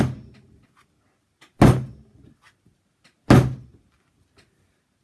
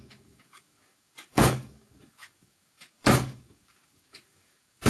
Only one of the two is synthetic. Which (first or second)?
second